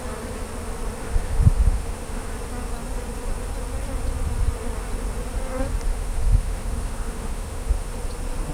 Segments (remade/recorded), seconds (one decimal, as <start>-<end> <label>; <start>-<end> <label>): 0.0-1.0 recorded; 1.0-2.3 remade; 2.3-5.9 recorded; 5.9-7.9 remade; 7.9-8.5 recorded